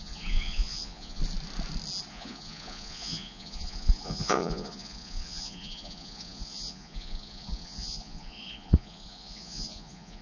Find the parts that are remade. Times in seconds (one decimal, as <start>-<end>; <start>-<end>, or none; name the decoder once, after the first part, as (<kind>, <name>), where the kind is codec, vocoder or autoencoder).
0.0-1.2 (vocoder, Vocos); 2.1-10.2